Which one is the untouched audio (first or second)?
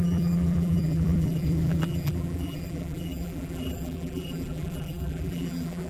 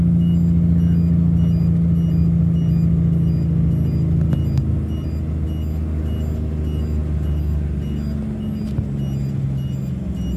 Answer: second